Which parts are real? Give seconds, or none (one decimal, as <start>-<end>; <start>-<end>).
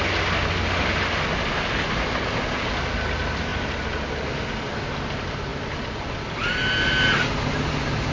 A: 0.0-8.1